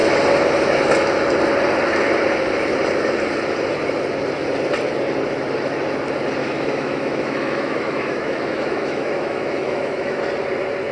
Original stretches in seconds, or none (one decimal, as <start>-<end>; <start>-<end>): 0.0-6.4; 10.2-10.9